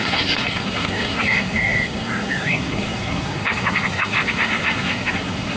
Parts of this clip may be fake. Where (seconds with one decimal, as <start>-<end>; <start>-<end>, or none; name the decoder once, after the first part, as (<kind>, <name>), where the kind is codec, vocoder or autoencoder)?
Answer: 0.0-5.6 (codec, SNAC)